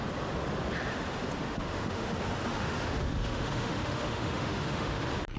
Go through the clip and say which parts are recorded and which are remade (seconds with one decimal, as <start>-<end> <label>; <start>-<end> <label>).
0.0-1.4 recorded; 1.4-2.1 remade; 2.1-2.5 recorded; 2.5-5.0 remade; 5.0-5.4 recorded